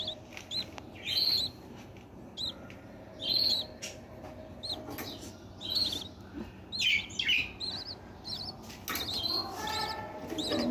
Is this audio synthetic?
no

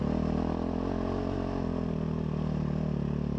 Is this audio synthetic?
no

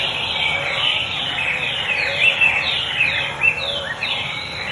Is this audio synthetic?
no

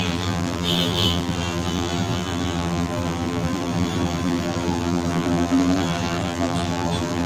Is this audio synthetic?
yes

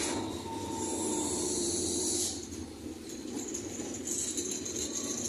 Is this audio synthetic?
no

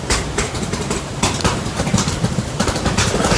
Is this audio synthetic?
yes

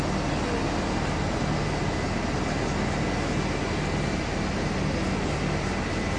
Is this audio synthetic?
no